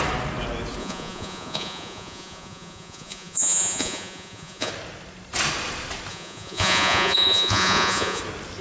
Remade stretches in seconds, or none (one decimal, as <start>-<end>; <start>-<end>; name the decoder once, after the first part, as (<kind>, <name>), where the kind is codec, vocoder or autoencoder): 0.8-4.7 (vocoder, Vocos); 6.1-8.2